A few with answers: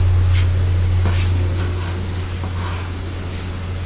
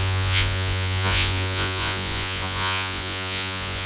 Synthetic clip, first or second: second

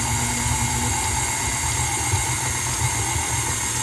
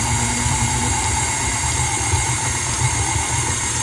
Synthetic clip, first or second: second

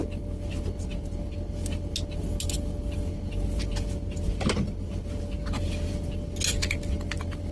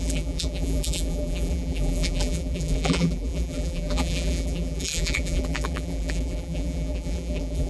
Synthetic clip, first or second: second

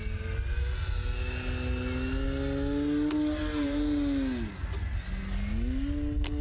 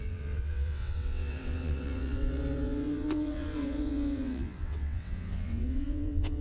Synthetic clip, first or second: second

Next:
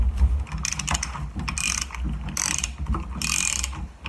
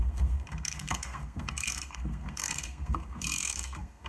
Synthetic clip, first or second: second